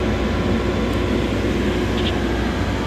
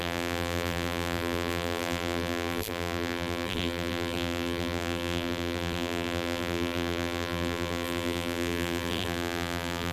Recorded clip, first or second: first